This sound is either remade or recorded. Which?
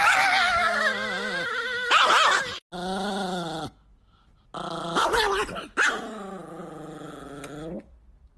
recorded